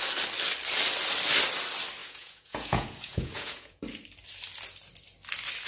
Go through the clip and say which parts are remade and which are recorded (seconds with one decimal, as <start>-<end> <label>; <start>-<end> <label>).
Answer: 0.0-2.0 recorded; 2.0-3.8 remade; 3.8-5.7 recorded